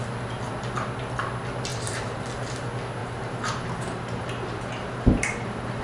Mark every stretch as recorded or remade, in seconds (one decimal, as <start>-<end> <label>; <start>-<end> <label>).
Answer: 0.0-1.7 recorded; 1.7-2.2 remade; 2.2-3.0 recorded; 3.0-5.8 remade